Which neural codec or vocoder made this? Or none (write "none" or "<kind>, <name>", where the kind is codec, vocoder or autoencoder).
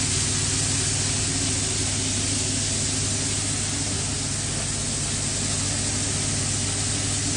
none